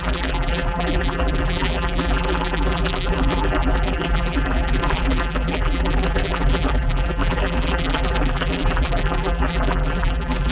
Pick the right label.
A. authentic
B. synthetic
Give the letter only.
B